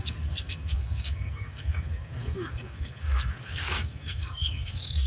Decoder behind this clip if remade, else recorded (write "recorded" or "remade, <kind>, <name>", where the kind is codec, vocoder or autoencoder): remade, codec, SNAC